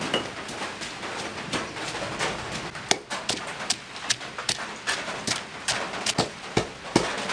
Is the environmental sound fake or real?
real